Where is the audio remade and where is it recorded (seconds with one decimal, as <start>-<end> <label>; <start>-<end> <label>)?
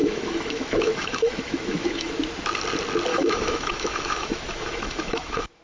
0.0-2.1 remade; 2.1-3.1 recorded; 3.1-5.6 remade